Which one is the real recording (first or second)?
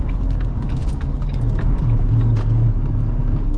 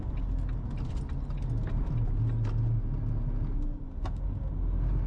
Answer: second